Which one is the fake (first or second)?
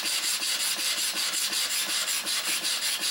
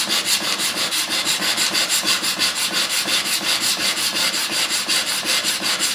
second